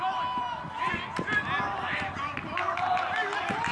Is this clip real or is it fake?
real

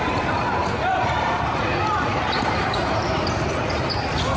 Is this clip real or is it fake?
fake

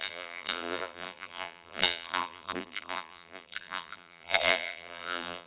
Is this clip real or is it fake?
fake